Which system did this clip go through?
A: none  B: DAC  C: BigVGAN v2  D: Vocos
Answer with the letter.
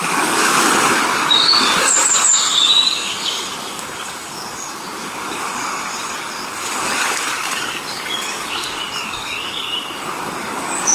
B